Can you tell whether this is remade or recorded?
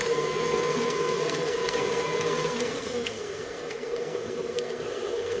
remade